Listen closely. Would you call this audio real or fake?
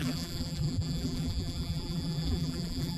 fake